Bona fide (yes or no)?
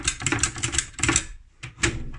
no